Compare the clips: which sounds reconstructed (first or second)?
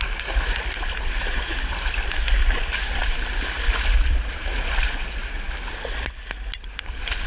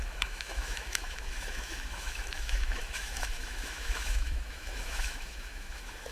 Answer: second